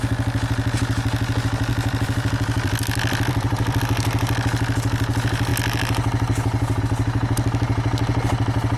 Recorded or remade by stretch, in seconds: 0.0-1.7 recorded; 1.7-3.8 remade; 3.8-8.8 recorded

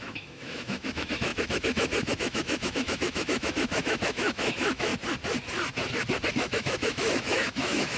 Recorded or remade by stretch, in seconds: 0.0-4.9 remade; 4.9-6.3 recorded; 6.3-8.0 remade

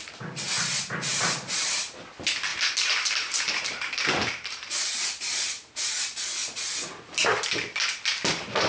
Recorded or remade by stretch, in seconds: 0.0-1.1 recorded; 1.1-1.8 remade; 1.8-2.5 recorded; 2.5-5.7 remade; 5.7-8.7 recorded

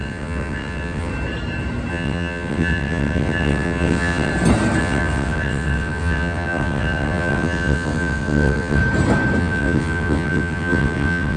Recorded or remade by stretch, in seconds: 0.0-1.1 remade; 1.1-1.9 recorded; 1.9-4.3 remade; 4.3-4.8 recorded; 4.8-8.8 remade; 8.8-9.4 recorded; 9.4-11.4 remade

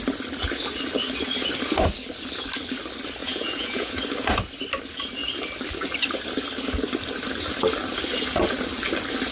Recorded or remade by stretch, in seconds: 0.0-3.2 recorded; 3.2-4.0 remade; 4.0-9.3 recorded

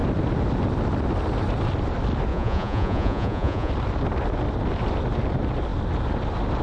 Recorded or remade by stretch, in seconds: 0.0-2.3 recorded; 2.3-3.7 remade; 3.7-6.6 recorded